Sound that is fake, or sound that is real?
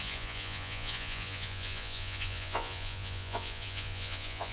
fake